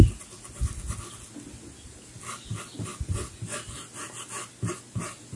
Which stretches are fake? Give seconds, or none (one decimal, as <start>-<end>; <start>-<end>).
none